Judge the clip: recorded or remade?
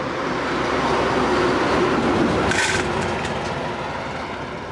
recorded